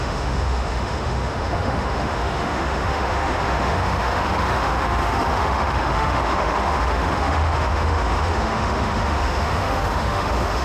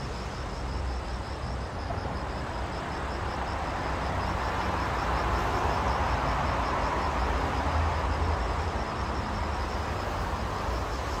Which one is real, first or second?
second